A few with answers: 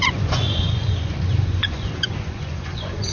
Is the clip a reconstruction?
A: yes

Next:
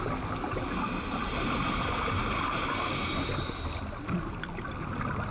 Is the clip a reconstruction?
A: no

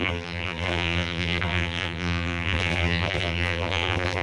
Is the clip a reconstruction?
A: yes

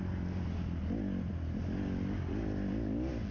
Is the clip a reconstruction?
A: no